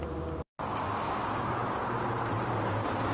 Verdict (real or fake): fake